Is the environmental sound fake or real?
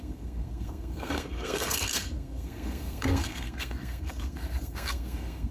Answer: fake